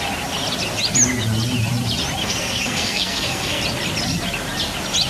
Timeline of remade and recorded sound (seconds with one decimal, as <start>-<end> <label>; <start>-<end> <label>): 0.0-2.2 recorded; 2.2-3.6 remade; 3.6-5.1 recorded